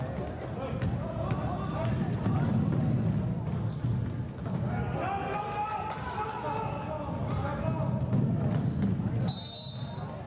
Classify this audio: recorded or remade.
recorded